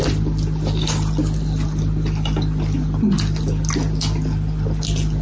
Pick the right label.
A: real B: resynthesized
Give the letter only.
A